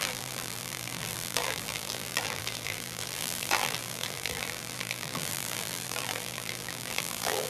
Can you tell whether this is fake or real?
fake